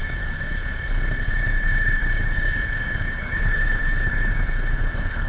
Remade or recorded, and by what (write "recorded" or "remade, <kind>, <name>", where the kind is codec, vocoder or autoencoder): remade, codec, HILCodec